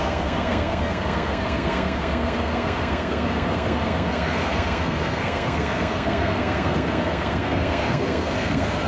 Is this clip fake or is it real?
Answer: fake